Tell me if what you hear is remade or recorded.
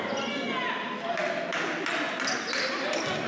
recorded